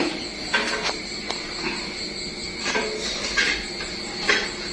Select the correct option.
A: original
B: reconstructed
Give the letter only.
A